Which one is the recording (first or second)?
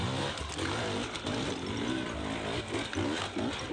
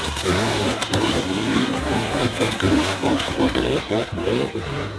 first